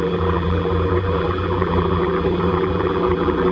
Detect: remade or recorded remade